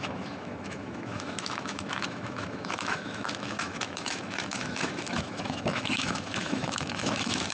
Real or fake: fake